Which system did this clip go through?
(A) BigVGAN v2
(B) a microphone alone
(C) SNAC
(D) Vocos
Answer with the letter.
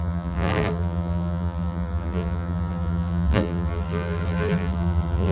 A